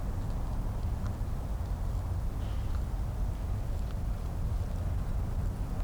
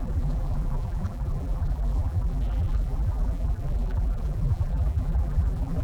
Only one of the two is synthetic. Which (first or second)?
second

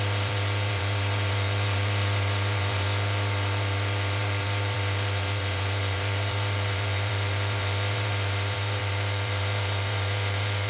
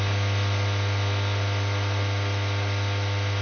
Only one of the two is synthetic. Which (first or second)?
first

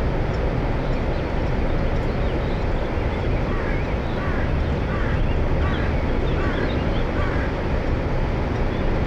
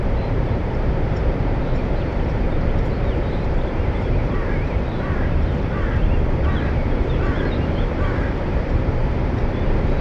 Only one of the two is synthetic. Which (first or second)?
second